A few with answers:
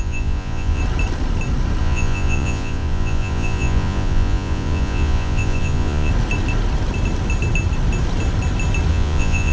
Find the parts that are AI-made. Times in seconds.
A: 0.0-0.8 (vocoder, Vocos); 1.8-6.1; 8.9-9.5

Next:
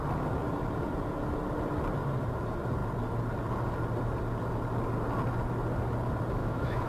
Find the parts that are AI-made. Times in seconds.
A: 6.4-6.9 (autoencoder, DAC-VAE)

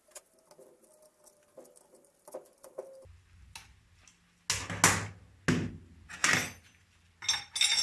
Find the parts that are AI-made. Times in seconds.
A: none

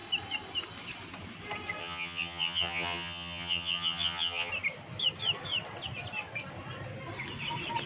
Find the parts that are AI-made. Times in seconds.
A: 1.8-4.5 (vocoder, HiFi-GAN)

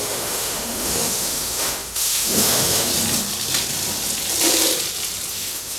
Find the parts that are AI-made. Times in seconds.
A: 0.0-2.9 (autoencoder, DAC-VAE); 5.3-5.8

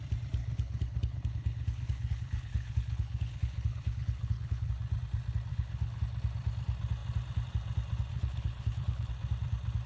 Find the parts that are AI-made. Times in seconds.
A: 0.4-4.7 (codec, HILCodec); 5.5-6.0; 8.1-9.1

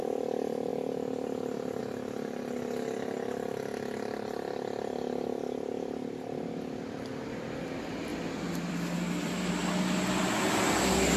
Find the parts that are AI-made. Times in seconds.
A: 0.7-1.8 (vocoder, BigVGAN v2)

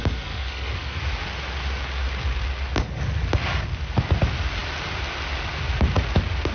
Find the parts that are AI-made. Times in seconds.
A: 0.0-1.0 (codec, SNAC)